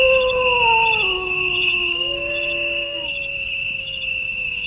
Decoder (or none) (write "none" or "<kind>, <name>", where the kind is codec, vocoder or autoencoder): autoencoder, DAC-VAE